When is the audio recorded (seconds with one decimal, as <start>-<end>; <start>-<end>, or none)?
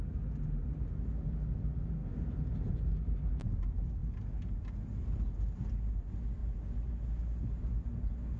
0.0-8.4